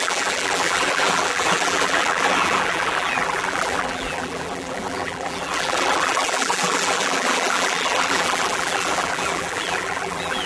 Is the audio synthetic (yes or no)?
yes